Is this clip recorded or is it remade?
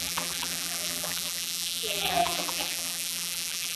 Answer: remade